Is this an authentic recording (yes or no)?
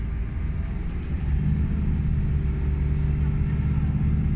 yes